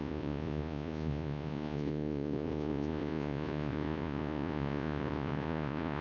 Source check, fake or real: fake